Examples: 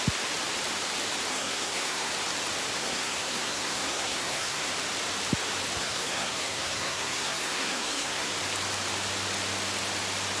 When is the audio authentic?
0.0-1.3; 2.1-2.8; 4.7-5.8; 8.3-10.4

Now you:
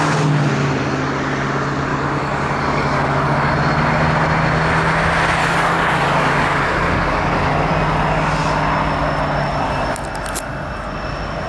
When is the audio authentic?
0.0-1.9; 3.5-5.4; 7.5-11.5

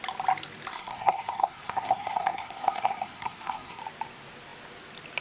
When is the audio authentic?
0.0-0.7; 3.8-5.2

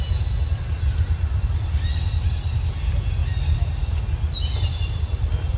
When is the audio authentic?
0.0-5.6

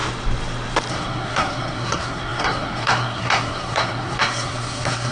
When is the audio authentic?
0.0-0.9